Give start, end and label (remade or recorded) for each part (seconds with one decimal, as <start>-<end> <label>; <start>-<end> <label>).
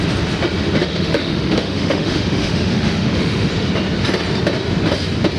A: 0.0-0.8 recorded; 0.8-3.5 remade; 3.5-5.4 recorded